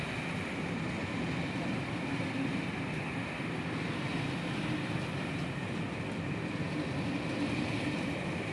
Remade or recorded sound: recorded